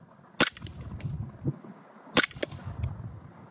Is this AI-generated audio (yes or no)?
no